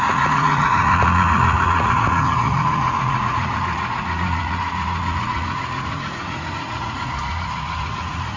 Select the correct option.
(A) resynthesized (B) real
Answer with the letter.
A